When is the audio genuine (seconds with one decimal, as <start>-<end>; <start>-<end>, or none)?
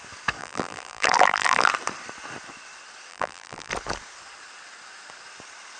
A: 0.0-0.4; 1.7-3.1; 3.7-5.8